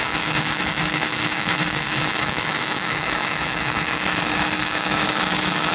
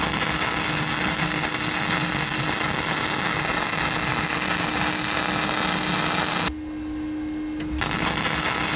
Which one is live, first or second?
second